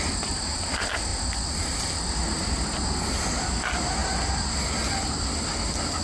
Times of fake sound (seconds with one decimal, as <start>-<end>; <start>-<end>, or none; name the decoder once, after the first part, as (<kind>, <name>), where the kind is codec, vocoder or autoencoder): none